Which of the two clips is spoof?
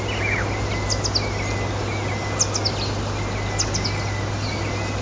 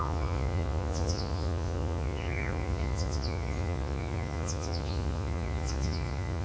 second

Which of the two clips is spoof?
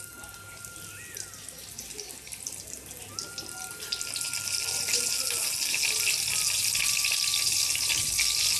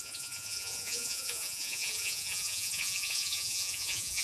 second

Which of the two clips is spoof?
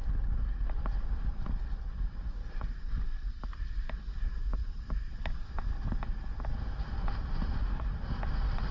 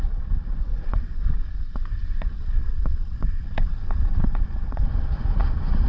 second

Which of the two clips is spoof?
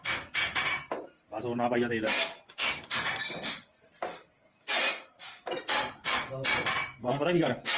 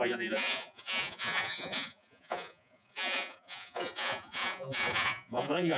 second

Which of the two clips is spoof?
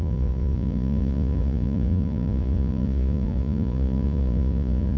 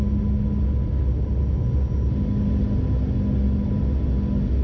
first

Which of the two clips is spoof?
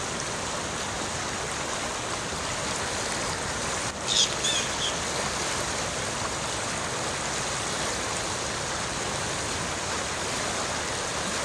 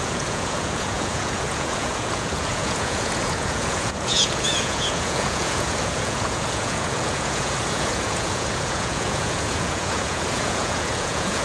second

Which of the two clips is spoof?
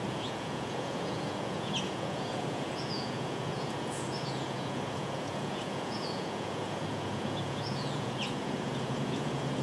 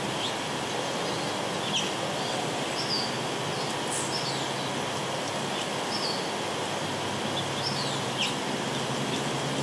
first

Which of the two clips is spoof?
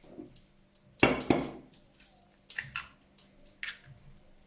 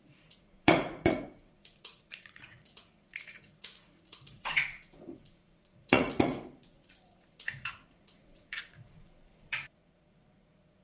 second